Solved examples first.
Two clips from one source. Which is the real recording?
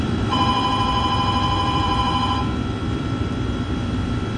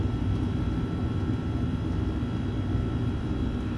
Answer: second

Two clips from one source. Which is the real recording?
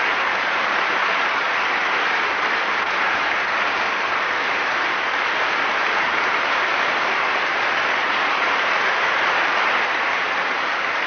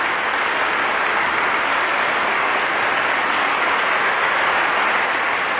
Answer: second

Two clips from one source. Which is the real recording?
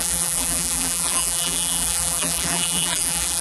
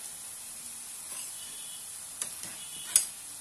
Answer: second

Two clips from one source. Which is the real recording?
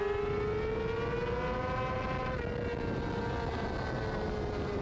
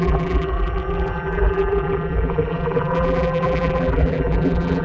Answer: first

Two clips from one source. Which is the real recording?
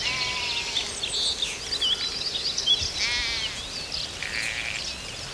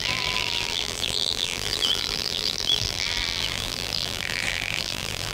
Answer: first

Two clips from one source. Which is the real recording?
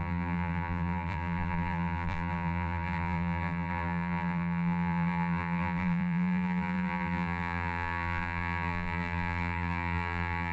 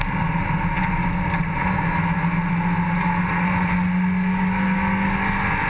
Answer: second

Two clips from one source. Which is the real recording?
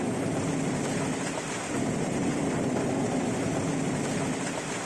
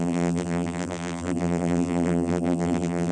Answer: first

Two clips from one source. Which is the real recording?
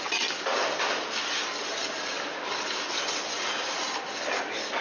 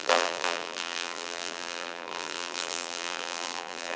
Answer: first